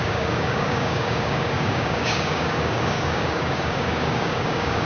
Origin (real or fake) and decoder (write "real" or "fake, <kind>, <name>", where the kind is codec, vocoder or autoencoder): fake, codec, DAC